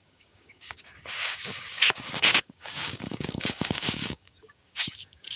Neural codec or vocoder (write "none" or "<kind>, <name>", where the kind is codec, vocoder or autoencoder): codec, DAC